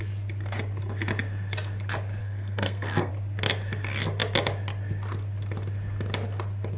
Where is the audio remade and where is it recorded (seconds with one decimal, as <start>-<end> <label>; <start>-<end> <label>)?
0.0-2.2 recorded; 2.2-3.1 remade; 3.1-6.8 recorded